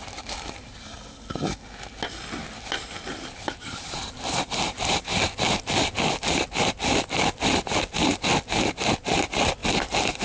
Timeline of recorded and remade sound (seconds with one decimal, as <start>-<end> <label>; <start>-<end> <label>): 0.0-10.2 recorded